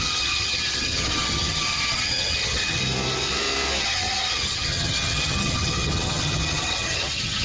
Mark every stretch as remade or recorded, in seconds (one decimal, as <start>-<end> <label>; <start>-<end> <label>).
0.0-2.8 remade; 2.8-3.8 recorded; 3.8-7.4 remade